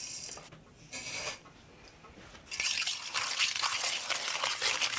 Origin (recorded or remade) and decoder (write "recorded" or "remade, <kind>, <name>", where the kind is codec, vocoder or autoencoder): recorded